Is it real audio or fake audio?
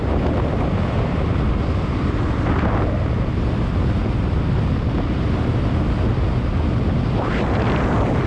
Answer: real